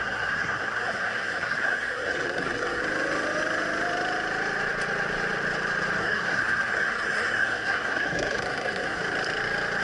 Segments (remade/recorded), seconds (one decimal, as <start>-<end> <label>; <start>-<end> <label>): 0.0-2.8 remade; 2.8-6.0 recorded; 6.0-9.0 remade; 9.0-9.8 recorded